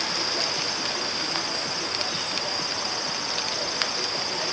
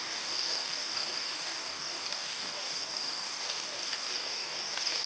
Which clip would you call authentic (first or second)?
first